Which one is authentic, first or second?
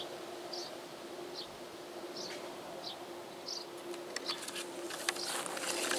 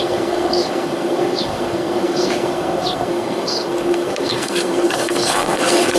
first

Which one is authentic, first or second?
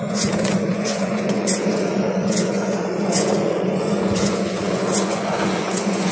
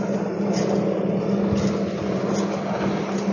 second